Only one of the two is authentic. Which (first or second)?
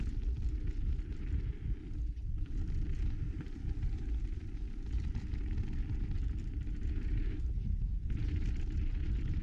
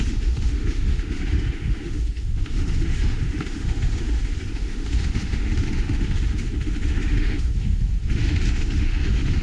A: first